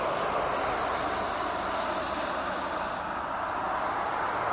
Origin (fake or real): real